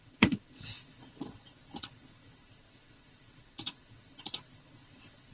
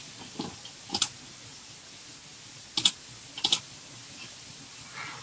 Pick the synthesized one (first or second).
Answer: first